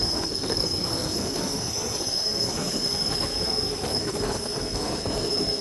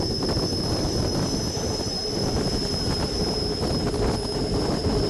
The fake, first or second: first